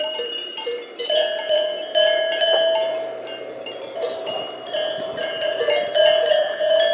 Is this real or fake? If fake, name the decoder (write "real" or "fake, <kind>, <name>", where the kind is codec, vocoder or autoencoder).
fake, vocoder, BigVGAN v2